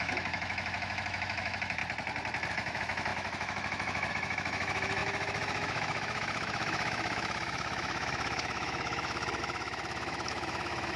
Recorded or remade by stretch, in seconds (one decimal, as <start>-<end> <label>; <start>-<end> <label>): 0.0-1.8 remade; 1.8-2.5 recorded; 2.5-11.0 remade